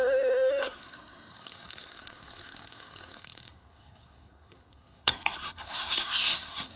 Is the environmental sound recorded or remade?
remade